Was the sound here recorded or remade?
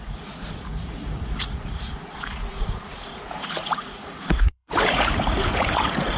remade